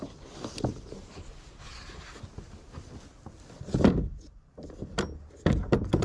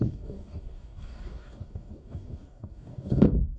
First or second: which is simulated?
second